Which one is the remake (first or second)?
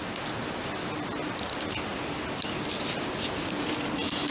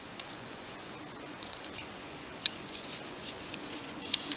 second